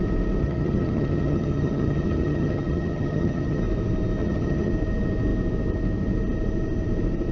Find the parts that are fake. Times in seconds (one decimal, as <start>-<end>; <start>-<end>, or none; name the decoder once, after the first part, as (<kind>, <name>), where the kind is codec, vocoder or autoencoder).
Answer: 0.4-3.6 (vocoder, HiFi-GAN); 4.2-4.7